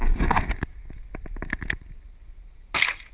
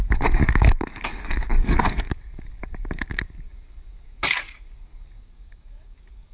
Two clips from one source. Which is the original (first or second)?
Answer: first